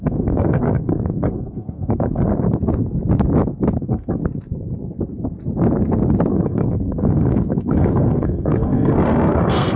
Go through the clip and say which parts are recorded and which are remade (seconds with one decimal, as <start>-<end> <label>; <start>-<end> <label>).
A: 0.0-2.3 remade; 2.3-3.8 recorded; 3.8-4.2 remade; 4.2-6.3 recorded; 6.3-9.8 remade